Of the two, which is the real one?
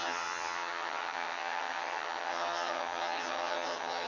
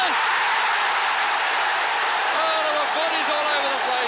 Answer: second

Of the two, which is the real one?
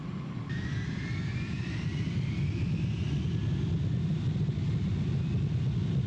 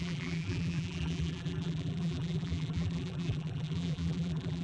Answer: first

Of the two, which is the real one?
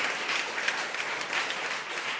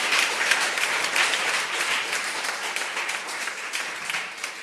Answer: first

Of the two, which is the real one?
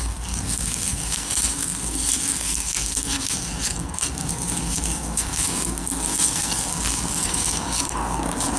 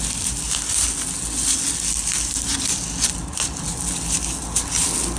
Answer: second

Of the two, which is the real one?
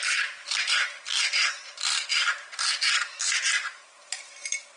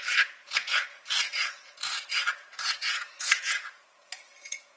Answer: first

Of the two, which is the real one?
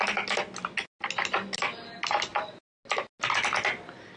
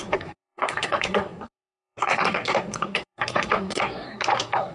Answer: first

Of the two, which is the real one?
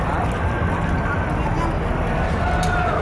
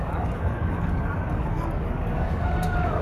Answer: first